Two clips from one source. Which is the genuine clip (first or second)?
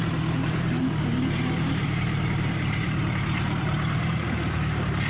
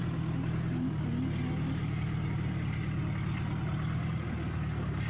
second